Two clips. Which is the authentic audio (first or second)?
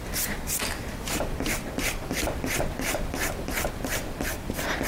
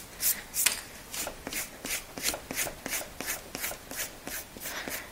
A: second